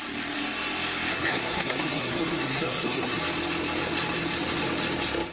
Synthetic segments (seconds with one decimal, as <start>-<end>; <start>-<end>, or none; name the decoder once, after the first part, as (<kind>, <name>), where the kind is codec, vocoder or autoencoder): 1.1-3.2 (codec, SNAC)